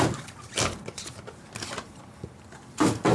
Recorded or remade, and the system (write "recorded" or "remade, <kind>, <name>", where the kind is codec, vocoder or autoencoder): recorded